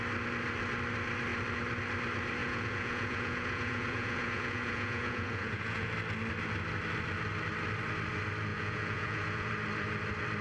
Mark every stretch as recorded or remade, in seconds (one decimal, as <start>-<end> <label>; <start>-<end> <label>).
0.0-2.4 recorded; 2.4-5.9 remade; 5.9-8.5 recorded; 8.5-9.5 remade; 9.5-10.4 recorded